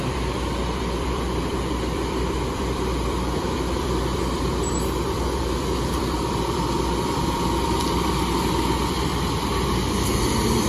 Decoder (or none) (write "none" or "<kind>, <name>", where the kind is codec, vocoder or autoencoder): vocoder, BigVGAN v2